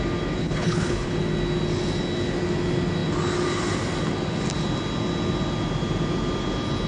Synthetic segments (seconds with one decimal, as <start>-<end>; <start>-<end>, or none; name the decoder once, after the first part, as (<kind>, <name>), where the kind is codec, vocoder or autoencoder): 0.4-1.1 (codec, HILCodec)